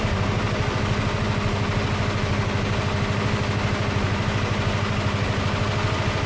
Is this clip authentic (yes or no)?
yes